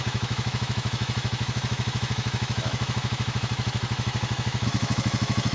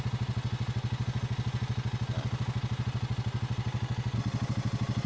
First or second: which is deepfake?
first